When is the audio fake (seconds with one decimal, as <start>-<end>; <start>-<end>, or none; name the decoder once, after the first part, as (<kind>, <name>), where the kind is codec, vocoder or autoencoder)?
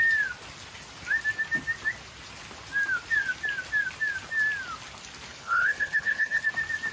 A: 5.3-6.4 (codec, HILCodec)